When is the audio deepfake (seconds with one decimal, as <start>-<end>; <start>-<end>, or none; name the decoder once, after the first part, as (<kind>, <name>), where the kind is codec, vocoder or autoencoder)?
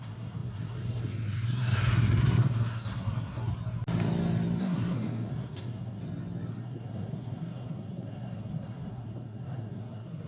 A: 0.0-3.5 (codec, SNAC); 4.6-6.0; 6.5-10.3